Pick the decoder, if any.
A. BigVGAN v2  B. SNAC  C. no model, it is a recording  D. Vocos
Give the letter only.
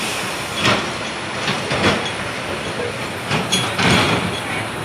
C